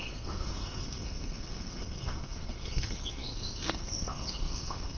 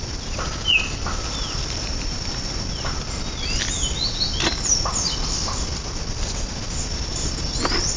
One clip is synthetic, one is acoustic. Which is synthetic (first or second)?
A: first